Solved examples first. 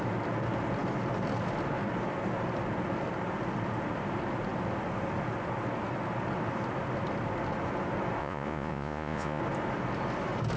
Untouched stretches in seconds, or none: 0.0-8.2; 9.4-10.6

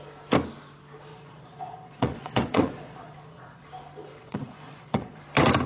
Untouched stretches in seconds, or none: 0.0-1.1; 3.6-4.0; 5.2-5.7

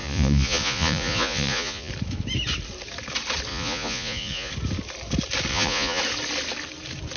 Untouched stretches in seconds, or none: 1.9-3.5; 4.5-5.5; 6.0-7.2

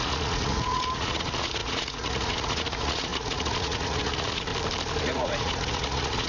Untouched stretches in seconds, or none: 4.5-5.0

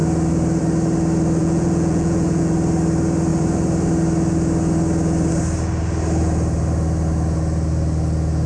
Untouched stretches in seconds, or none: 0.0-1.4; 2.5-8.5

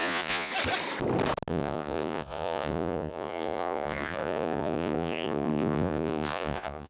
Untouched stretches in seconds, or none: 0.5-1.5

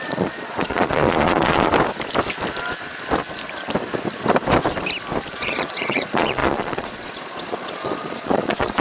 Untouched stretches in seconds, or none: 1.7-5.3

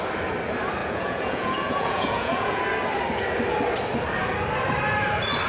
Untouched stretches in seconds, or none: 0.0-0.8; 2.6-5.5